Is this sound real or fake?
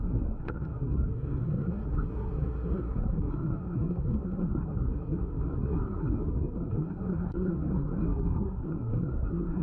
fake